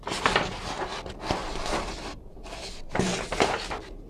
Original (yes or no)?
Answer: yes